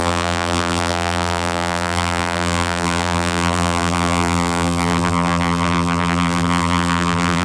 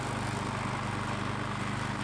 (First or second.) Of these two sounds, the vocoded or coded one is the first